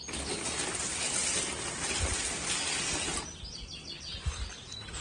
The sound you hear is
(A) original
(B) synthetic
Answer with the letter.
A